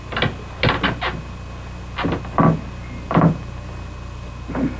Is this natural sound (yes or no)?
yes